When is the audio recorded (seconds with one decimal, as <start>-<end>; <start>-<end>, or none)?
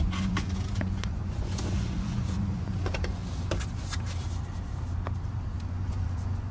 3.2-5.7